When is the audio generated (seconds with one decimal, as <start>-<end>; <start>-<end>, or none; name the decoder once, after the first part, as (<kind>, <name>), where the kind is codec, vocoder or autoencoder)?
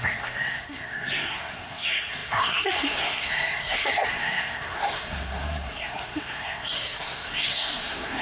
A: 0.0-8.2 (codec, SNAC)